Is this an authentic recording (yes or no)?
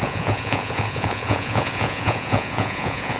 no